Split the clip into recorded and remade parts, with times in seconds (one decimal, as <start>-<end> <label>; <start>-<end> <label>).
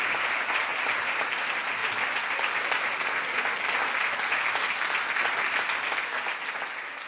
0.0-0.7 recorded; 0.7-1.3 remade; 1.3-7.1 recorded